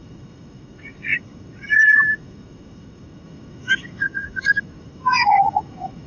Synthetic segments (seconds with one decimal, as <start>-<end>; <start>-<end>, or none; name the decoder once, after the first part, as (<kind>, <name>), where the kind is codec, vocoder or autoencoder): 0.0-6.1 (autoencoder, DAC-VAE)